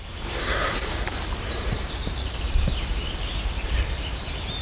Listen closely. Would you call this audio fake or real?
fake